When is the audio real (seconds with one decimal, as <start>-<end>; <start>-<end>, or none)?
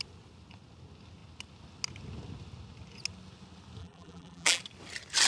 0.0-3.8; 4.6-5.3